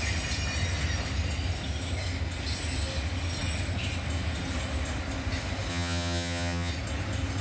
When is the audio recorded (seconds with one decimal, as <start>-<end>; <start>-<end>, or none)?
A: 0.0-5.7; 6.7-7.4